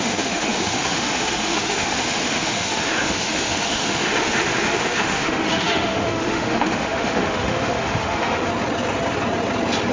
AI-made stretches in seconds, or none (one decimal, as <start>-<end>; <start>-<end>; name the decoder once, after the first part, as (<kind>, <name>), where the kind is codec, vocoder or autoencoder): 0.0-8.5 (autoencoder, DAC-VAE)